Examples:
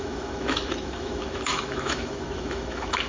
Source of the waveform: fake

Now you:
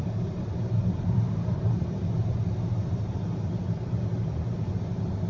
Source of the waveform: real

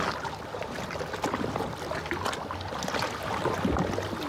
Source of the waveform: real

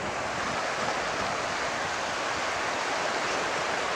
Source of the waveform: real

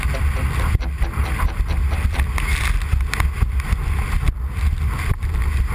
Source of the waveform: real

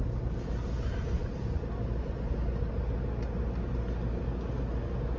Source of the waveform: real